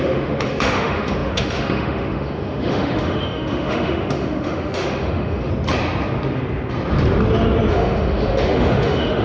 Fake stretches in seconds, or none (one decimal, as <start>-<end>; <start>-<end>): 0.0-5.5; 7.7-9.2